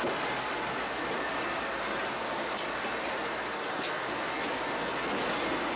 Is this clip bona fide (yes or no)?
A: yes